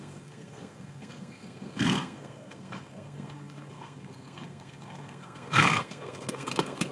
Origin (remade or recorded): remade